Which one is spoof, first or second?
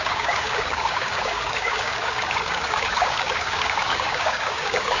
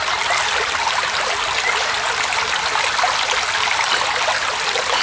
first